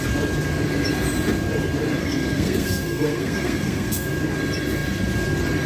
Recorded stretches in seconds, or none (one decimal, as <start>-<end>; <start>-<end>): 0.0-2.0; 4.1-5.7